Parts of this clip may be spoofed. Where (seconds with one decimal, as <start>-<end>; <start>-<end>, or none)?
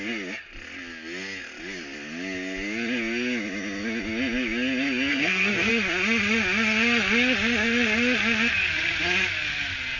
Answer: 5.1-5.7